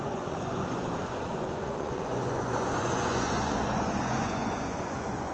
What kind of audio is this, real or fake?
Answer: fake